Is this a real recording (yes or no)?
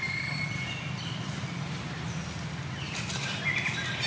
yes